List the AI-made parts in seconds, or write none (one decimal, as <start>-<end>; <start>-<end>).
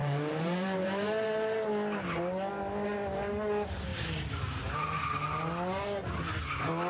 0.0-1.7; 3.9-5.0